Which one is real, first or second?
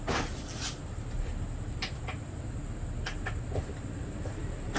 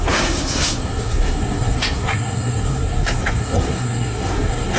first